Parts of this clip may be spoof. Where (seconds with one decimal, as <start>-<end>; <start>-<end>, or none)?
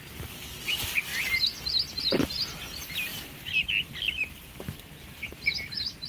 none